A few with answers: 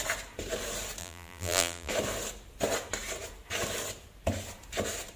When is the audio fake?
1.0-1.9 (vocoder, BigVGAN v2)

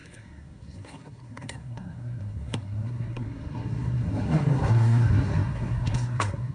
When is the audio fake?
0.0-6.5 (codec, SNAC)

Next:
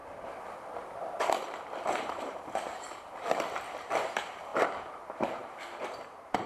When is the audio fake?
1.2-6.5 (vocoder, BigVGAN v2)

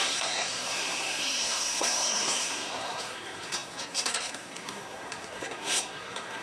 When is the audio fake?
0.0-6.4 (codec, SNAC)

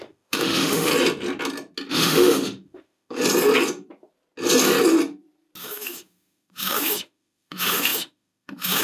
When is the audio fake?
0.0-0.9 (autoencoder, DAC-VAE); 1.9-3.2; 5.6-8.8